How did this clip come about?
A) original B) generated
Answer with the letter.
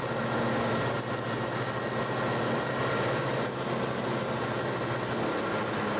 A